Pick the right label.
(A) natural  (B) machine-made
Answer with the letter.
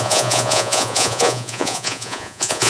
B